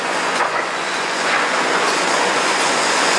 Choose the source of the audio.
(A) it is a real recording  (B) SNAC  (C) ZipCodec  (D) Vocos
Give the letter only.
D